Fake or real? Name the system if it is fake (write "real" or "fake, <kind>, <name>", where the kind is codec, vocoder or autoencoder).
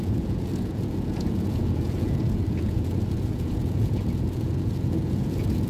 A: fake, vocoder, Vocos